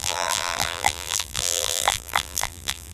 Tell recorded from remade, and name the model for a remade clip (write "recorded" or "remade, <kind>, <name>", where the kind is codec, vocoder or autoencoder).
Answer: remade, vocoder, BigVGAN v2